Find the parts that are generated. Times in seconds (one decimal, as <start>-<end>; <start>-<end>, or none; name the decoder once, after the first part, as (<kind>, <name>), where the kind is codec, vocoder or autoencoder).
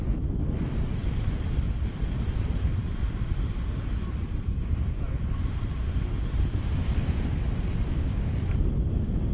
none